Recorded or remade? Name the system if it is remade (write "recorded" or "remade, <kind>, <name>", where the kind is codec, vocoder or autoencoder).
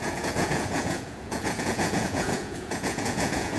remade, vocoder, Vocos